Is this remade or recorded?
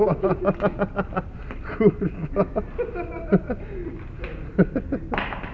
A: recorded